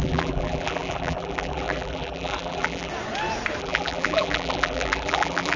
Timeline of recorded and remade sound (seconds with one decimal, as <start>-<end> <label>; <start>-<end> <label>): 0.0-2.9 remade; 2.9-3.6 recorded; 3.6-5.6 remade